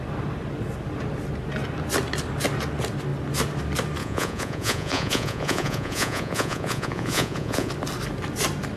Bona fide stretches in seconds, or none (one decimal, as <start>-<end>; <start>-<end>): 0.0-4.0; 7.7-8.8